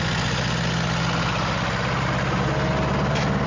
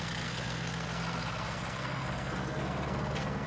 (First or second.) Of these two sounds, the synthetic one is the second